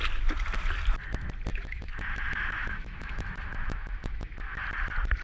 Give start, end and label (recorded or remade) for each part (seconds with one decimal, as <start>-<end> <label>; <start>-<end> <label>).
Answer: 0.0-1.5 recorded; 1.5-4.6 remade; 4.6-5.2 recorded